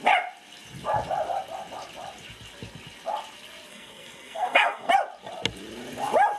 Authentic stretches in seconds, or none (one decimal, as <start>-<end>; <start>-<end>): 0.0-3.7; 4.9-6.4